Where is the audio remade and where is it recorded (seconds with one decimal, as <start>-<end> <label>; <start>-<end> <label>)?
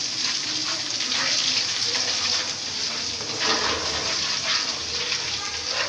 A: 0.0-5.9 recorded